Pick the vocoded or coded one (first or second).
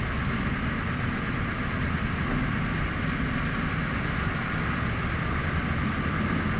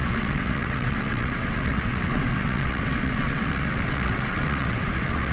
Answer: second